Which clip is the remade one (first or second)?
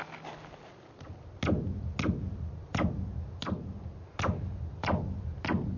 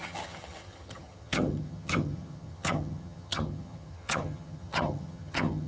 second